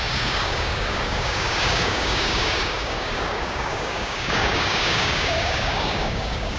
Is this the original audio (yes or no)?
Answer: no